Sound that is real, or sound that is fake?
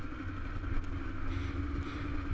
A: real